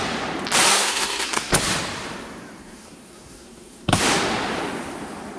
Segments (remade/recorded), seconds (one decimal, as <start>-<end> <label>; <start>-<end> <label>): 0.0-0.7 recorded; 0.7-1.5 remade; 1.5-2.6 recorded; 2.6-4.0 remade; 4.0-5.4 recorded